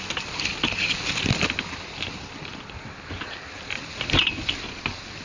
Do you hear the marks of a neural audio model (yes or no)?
no